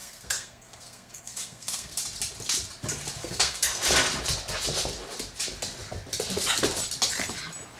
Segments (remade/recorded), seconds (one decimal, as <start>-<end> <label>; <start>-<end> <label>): 0.0-2.0 remade; 2.0-3.2 recorded; 3.2-3.8 remade; 3.8-7.8 recorded